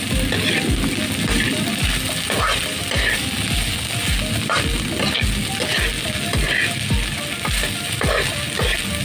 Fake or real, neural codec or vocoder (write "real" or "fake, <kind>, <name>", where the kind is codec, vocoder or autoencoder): real